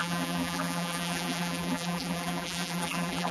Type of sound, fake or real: fake